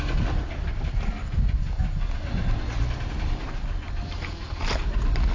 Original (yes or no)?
yes